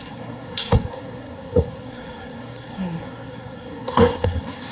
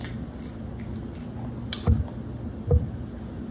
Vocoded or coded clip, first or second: first